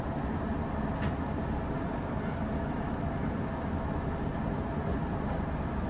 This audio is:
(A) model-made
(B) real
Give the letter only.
B